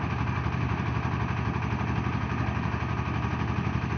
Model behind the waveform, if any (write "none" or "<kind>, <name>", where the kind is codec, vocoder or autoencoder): none